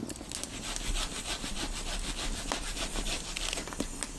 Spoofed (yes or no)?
no